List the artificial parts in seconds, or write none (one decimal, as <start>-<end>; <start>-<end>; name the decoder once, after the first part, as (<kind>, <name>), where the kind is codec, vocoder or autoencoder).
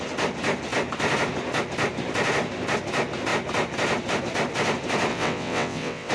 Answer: 5.1-6.1 (vocoder, WaveNeXt)